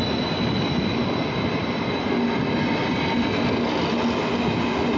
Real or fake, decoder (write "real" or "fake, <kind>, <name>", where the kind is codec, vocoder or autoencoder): real